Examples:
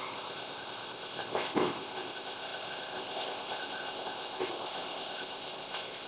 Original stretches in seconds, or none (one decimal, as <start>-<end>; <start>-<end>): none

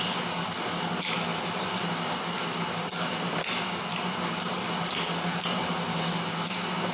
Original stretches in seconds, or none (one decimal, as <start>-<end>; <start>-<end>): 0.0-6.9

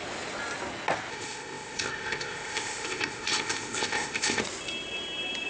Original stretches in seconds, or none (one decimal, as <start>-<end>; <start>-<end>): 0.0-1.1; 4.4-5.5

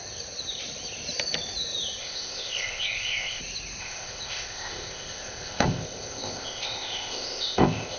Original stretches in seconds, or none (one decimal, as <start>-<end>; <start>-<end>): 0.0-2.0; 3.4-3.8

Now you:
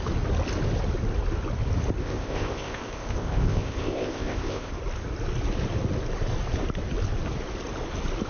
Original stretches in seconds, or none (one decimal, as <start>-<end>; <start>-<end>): 0.0-2.0; 4.7-8.3

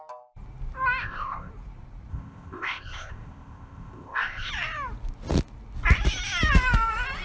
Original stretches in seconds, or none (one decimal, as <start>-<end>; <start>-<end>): 0.0-1.0; 1.5-2.1; 4.5-7.2

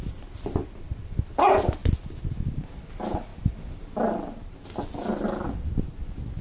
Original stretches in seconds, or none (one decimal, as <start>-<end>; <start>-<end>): 0.0-6.4

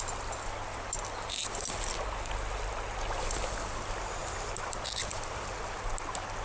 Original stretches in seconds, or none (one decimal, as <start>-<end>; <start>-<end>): 0.0-6.4